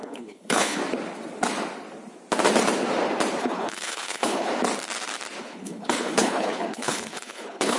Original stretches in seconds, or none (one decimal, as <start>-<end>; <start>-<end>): 0.8-3.4; 4.5-5.4